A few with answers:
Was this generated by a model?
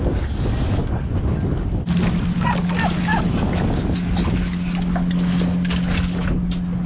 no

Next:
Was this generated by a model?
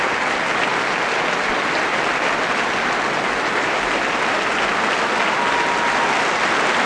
no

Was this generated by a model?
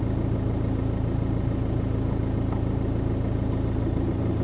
no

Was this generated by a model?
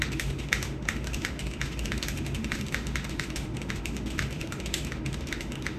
yes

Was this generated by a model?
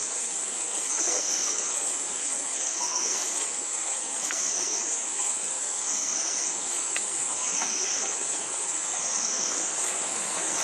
yes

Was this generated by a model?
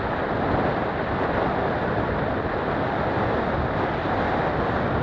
no